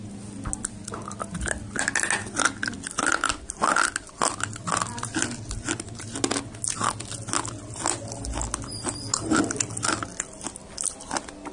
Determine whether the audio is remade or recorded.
recorded